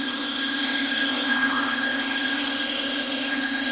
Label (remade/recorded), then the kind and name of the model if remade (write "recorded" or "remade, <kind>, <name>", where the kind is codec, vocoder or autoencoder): remade, codec, ZipCodec